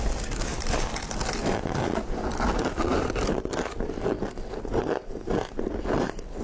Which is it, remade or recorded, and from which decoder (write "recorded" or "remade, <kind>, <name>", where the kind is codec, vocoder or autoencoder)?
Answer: recorded